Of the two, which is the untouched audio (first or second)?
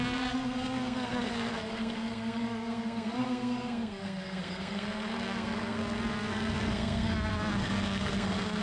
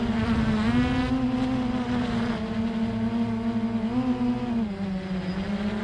second